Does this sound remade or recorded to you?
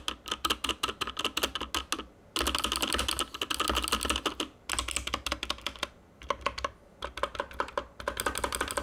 recorded